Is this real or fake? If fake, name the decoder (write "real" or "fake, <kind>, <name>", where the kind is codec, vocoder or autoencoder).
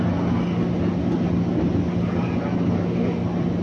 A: real